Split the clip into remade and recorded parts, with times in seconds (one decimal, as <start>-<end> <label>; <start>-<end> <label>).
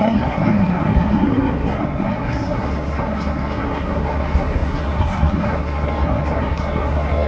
0.0-7.3 remade